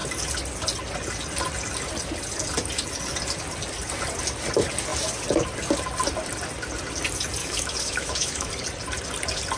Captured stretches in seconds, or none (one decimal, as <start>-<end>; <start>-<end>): 0.0-7.4; 8.5-9.6